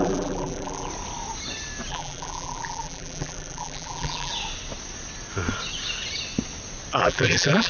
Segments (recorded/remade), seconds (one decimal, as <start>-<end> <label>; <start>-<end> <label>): 0.0-0.9 remade; 0.9-1.9 recorded; 1.9-4.3 remade; 4.3-7.0 recorded; 7.0-7.7 remade